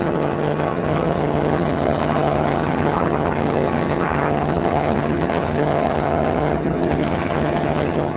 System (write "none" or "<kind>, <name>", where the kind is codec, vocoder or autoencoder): vocoder, HiFi-GAN